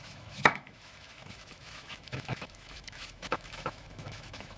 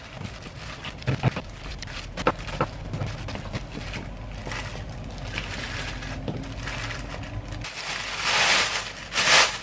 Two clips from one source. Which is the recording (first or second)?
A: second